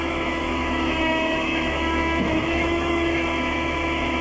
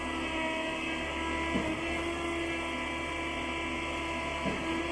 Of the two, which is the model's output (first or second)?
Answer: first